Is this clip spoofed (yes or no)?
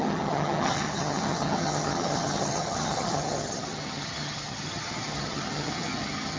yes